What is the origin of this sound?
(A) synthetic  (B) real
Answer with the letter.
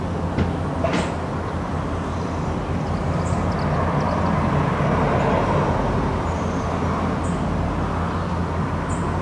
B